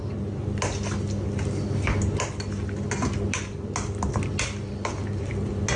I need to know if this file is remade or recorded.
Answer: recorded